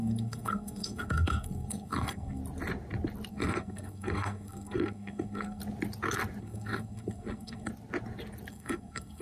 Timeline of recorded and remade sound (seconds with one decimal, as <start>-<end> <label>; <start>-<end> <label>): 0.0-2.4 remade; 2.4-3.3 recorded; 3.3-5.6 remade; 5.6-6.4 recorded; 6.4-7.7 remade; 7.7-8.5 recorded; 8.5-9.2 remade